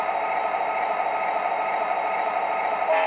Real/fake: fake